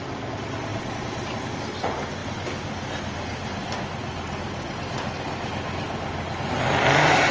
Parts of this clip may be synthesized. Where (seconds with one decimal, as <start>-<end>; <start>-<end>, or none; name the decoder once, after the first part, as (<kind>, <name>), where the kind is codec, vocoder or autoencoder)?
none